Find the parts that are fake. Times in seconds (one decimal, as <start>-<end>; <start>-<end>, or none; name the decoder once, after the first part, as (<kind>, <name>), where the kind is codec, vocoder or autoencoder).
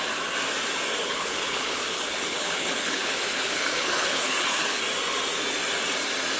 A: 1.0-4.8 (codec, HILCodec)